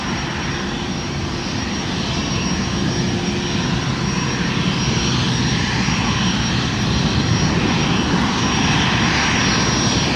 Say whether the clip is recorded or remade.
recorded